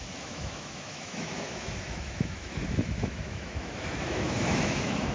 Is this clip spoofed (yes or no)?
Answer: yes